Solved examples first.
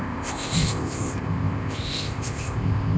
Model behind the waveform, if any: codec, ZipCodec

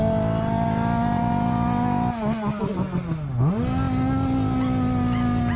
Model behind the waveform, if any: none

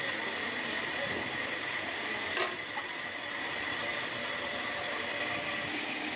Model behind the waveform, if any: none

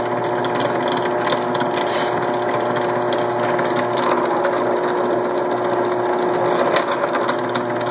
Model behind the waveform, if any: none